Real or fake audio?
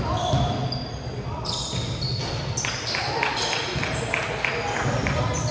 real